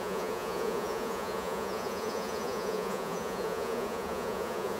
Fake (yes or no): yes